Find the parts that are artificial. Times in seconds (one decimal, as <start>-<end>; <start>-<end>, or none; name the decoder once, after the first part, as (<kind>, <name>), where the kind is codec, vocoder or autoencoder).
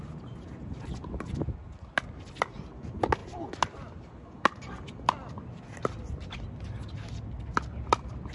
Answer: none